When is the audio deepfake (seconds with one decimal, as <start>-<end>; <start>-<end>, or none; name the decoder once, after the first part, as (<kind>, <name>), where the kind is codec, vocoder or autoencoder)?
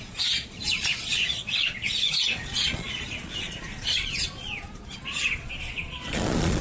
0.0-6.6 (vocoder, Vocos)